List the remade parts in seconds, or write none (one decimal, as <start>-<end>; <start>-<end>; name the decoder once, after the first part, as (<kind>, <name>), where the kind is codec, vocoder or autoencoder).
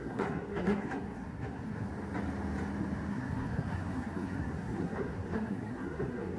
0.0-1.9 (codec, SNAC); 3.1-6.4